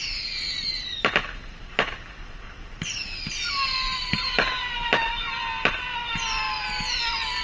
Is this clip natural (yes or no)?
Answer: yes